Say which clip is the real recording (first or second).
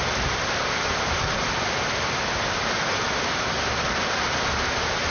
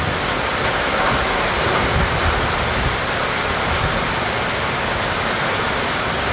second